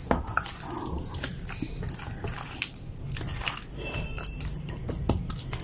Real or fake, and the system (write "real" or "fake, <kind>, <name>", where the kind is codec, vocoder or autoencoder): real